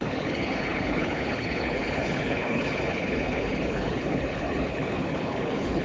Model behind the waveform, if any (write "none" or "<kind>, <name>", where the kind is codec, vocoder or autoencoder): codec, HILCodec